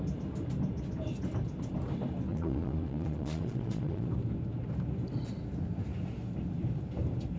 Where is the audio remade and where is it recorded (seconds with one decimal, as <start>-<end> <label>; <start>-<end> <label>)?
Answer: 0.0-2.3 recorded; 2.3-4.1 remade; 4.1-7.4 recorded